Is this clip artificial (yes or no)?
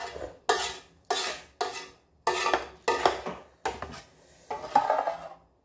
no